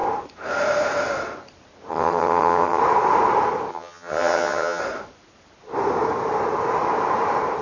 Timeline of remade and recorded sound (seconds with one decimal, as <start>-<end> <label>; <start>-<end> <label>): 0.0-1.9 recorded; 1.9-2.8 remade; 2.8-3.7 recorded; 3.7-4.8 remade; 4.8-7.6 recorded